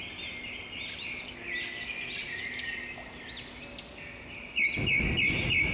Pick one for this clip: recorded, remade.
recorded